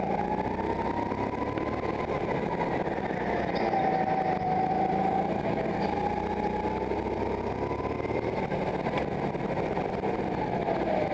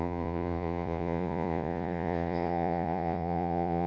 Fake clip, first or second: second